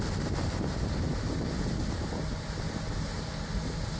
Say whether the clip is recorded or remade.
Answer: recorded